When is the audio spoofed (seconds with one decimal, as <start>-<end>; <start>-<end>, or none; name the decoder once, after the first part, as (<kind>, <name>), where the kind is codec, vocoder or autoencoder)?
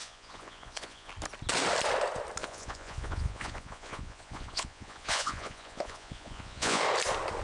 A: 0.0-1.1 (vocoder, Vocos); 2.4-6.8